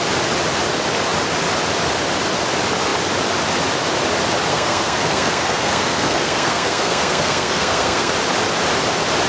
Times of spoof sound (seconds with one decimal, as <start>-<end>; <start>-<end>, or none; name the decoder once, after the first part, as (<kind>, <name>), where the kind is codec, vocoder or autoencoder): 4.5-8.1 (codec, SNAC)